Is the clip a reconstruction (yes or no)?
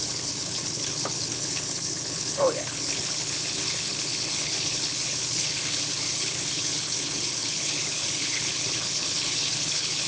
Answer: yes